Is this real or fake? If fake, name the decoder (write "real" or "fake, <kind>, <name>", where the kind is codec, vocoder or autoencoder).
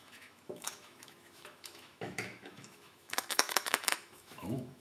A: fake, autoencoder, DAC-VAE